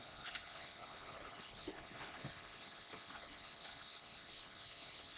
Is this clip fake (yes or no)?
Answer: yes